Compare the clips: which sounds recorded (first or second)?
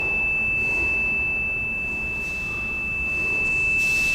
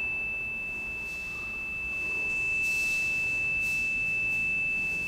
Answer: first